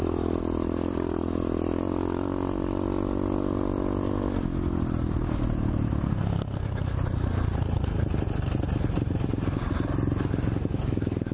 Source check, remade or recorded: recorded